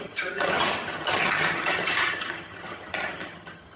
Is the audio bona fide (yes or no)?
no